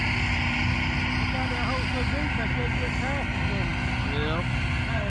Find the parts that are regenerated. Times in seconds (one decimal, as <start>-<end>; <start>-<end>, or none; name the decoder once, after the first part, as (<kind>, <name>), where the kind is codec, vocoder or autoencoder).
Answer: none